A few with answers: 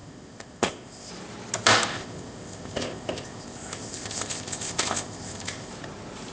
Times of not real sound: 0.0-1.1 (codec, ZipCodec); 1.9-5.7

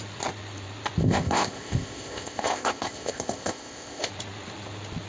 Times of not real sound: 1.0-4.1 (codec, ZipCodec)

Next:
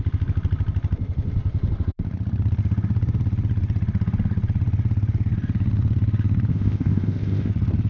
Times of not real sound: 6.5-7.5 (codec, ZipCodec)